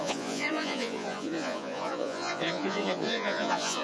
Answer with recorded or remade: remade